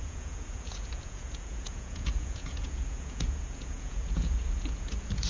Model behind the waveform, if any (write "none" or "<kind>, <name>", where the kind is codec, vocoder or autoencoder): vocoder, Vocos